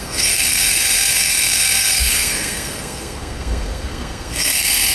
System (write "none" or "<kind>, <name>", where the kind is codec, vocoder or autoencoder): codec, SNAC